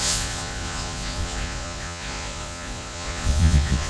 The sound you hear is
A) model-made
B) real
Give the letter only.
A